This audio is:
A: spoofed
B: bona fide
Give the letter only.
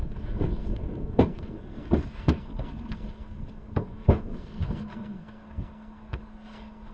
A